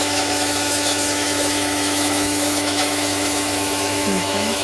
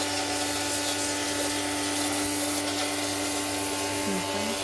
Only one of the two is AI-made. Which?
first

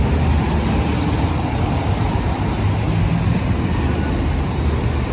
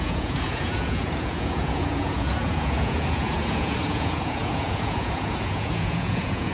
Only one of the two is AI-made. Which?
second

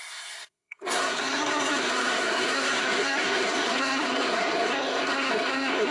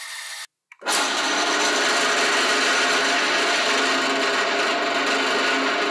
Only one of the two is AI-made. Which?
first